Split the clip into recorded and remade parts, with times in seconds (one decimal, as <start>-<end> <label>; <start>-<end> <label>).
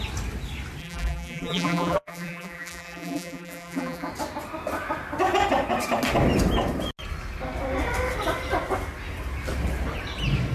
0.0-0.8 recorded; 0.8-4.1 remade; 4.1-10.5 recorded